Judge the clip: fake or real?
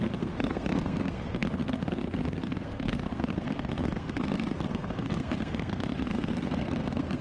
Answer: fake